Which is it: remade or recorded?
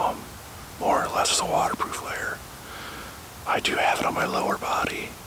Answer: remade